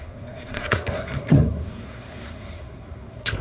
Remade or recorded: remade